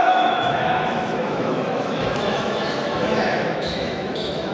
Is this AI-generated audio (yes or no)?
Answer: yes